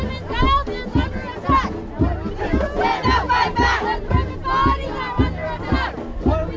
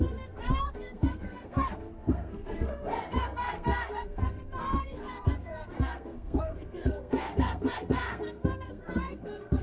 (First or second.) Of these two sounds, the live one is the first